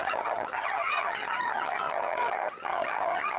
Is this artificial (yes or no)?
yes